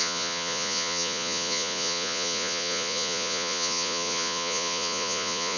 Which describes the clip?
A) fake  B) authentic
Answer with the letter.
A